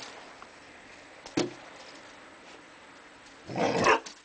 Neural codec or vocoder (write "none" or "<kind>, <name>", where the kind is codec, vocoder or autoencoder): none